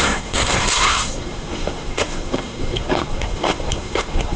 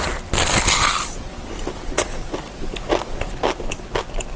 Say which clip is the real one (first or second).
second